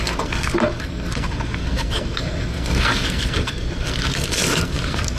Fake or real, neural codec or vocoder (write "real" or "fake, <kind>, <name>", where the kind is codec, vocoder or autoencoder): fake, codec, SNAC